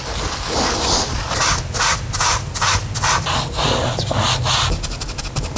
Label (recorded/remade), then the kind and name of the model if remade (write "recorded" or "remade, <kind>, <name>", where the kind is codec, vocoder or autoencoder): recorded